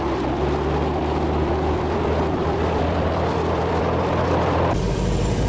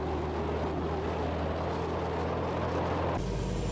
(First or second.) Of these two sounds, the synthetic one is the first